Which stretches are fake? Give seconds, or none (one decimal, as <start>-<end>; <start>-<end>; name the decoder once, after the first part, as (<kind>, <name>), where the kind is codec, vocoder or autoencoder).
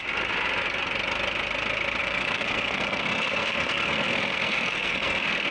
2.0-5.5 (codec, SNAC)